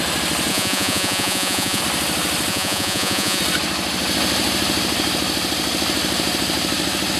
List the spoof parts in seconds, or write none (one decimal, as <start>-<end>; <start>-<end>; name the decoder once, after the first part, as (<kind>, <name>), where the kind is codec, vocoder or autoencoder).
0.5-1.8 (vocoder, Vocos); 2.5-3.4